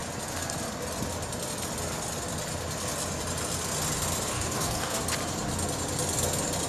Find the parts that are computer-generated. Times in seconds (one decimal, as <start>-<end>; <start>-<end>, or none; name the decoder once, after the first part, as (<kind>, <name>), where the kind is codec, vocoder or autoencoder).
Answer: 4.3-5.0 (codec, DAC)